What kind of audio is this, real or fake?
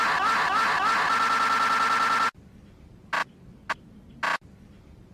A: real